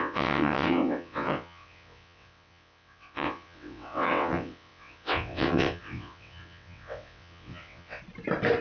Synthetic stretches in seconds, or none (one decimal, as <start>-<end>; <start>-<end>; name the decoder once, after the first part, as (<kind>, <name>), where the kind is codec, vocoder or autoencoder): 0.0-8.0 (vocoder, WaveNeXt)